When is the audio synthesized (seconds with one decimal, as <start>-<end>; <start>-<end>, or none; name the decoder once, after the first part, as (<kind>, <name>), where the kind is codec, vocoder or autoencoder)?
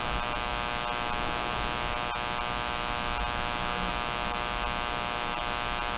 none